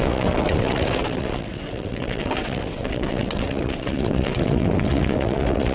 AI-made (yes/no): yes